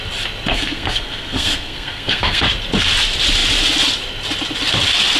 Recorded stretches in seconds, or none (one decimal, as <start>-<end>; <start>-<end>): 0.0-0.5; 2.4-5.2